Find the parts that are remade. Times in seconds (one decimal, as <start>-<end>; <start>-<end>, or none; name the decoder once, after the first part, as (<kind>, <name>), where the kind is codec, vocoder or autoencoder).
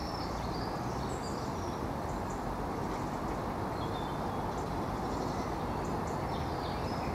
0.0-1.1 (vocoder, BigVGAN v2)